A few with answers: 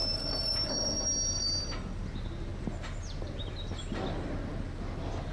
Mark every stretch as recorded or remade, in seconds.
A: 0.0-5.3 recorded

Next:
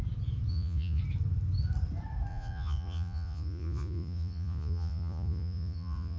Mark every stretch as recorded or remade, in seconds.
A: 0.0-0.5 recorded; 0.5-1.0 remade; 1.0-2.3 recorded; 2.3-6.2 remade

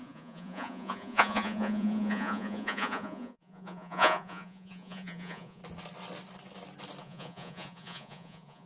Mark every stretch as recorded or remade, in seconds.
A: 0.0-5.6 remade; 5.6-7.0 recorded; 7.0-8.7 remade

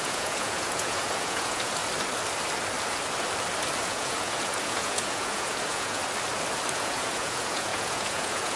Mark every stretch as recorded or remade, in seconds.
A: 0.0-1.8 remade; 1.8-3.8 recorded; 3.8-6.0 remade; 6.0-6.7 recorded; 6.7-8.6 remade